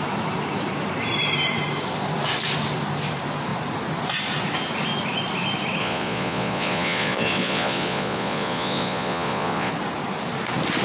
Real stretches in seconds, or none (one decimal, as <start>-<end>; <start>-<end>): 0.0-5.8; 9.7-10.8